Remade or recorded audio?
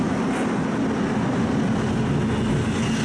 recorded